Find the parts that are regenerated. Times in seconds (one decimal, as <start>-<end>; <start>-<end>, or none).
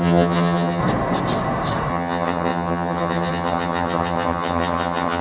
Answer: 0.0-0.8; 1.9-5.2